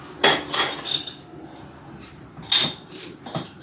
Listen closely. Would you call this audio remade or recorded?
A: recorded